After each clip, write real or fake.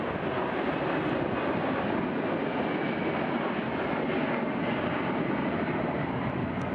real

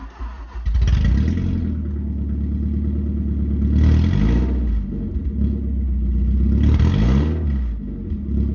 real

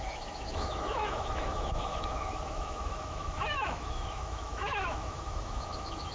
fake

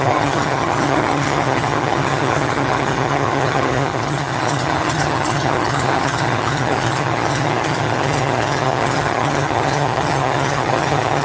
fake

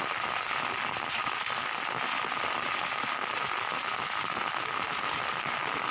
real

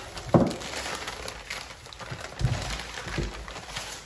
real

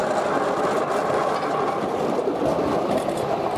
real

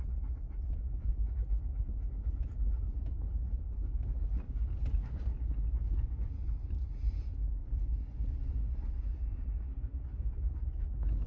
real